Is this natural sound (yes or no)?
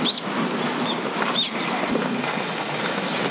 yes